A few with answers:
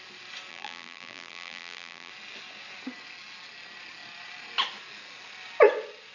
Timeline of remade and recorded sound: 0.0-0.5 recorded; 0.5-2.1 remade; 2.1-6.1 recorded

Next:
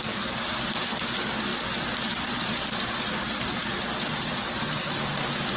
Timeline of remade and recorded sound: 0.0-1.5 remade; 1.5-2.1 recorded; 2.1-5.6 remade

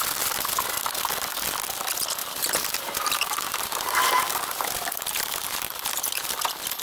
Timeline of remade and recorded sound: 0.0-2.2 recorded; 2.2-6.3 remade; 6.3-6.8 recorded

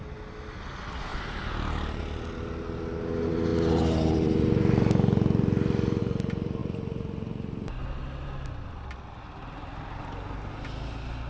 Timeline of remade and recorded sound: 0.0-1.1 recorded; 1.1-2.0 remade; 2.0-11.3 recorded

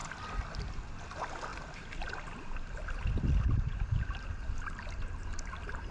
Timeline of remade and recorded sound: 0.0-1.5 recorded; 1.5-4.8 remade; 4.8-5.9 recorded

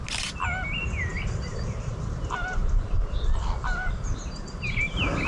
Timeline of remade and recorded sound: 0.0-1.1 recorded; 1.1-4.3 remade; 4.3-5.3 recorded